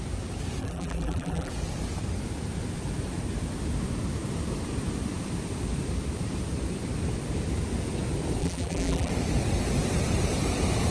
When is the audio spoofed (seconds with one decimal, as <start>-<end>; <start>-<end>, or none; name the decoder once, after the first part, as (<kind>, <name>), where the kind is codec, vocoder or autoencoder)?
0.6-1.5 (vocoder, BigVGAN v2); 8.4-9.1